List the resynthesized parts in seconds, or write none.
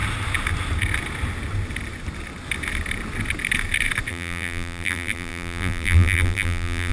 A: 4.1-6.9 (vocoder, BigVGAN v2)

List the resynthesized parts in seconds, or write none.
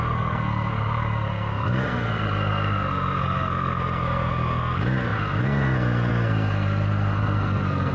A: 0.0-7.9 (codec, SNAC)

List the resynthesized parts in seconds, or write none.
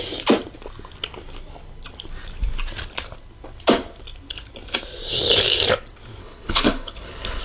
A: 6.2-7.4 (codec, HILCodec)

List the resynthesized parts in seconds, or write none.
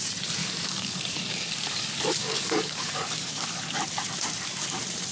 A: 0.4-3.5 (codec, DAC)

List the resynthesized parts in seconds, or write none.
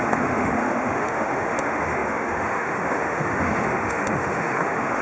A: 0.0-5.0 (autoencoder, DAC-VAE)